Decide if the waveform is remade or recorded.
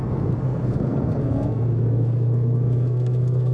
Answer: remade